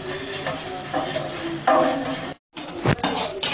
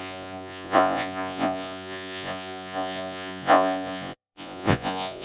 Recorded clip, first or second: first